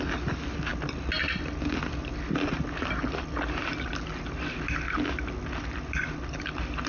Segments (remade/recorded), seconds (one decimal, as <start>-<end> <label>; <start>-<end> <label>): 0.0-6.9 recorded